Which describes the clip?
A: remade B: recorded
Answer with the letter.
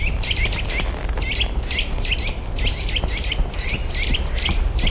B